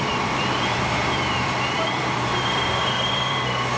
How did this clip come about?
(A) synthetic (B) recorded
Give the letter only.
A